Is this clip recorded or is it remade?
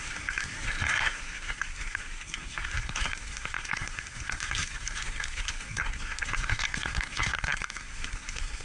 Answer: remade